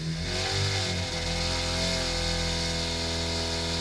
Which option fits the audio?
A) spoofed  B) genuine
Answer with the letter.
B